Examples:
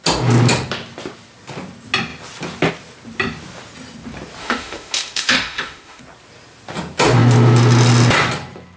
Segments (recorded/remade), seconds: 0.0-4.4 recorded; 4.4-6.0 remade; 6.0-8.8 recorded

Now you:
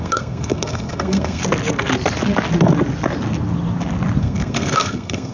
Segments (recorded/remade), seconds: 0.0-1.4 remade; 1.4-4.2 recorded; 4.2-5.3 remade

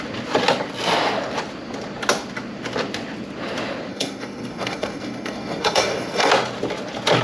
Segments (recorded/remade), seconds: 0.0-3.9 recorded; 3.9-6.3 remade; 6.3-7.2 recorded

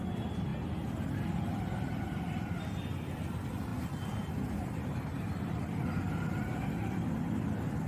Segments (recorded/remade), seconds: 0.0-7.9 recorded

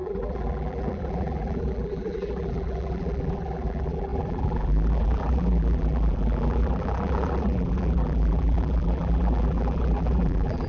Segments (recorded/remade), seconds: 0.0-10.7 remade

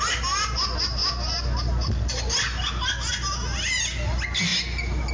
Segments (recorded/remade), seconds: 0.0-5.1 recorded

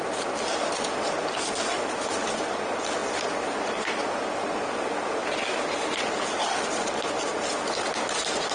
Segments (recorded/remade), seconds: 0.0-8.5 recorded

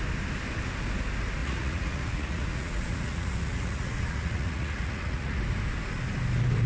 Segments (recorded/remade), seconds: 0.0-1.4 recorded; 1.4-5.4 remade; 5.4-6.7 recorded